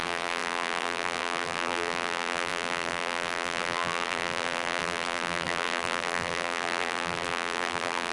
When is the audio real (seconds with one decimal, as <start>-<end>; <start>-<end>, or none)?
none